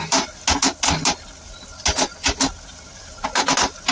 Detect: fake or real real